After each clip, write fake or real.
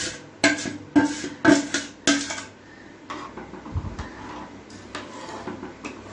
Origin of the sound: real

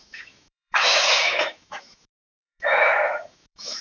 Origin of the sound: fake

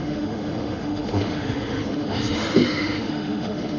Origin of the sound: fake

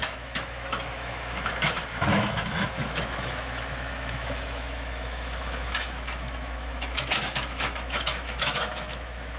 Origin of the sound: fake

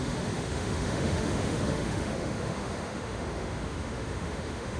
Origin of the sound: fake